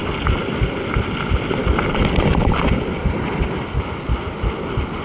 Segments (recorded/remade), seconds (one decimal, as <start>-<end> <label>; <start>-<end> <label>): 0.0-5.0 recorded